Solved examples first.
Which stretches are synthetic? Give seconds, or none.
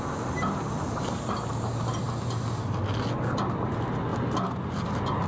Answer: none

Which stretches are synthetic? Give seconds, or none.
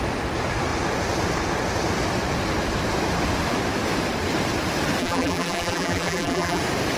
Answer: 5.0-6.6 (vocoder, BigVGAN v2)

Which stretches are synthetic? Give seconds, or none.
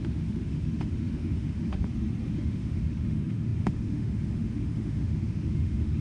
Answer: 0.0-1.8 (autoencoder, DAC-VAE); 2.3-6.0